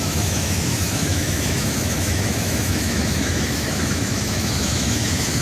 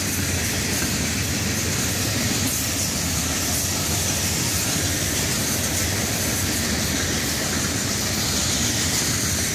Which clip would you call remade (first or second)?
first